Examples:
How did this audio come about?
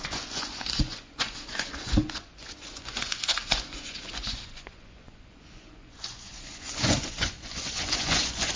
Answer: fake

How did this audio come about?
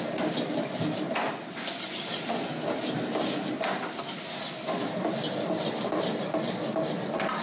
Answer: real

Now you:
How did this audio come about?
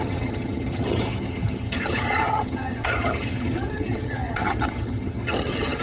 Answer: fake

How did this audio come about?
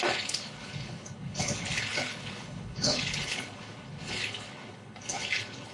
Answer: fake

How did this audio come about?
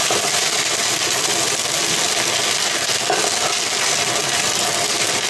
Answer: real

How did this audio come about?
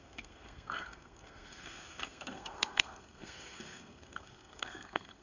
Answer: fake